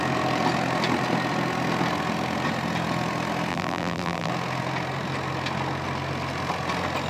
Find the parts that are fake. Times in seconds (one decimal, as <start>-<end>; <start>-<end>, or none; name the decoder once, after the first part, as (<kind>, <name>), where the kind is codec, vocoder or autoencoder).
3.5-4.3 (vocoder, BigVGAN v2)